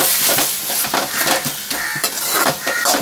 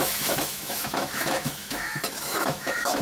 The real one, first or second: first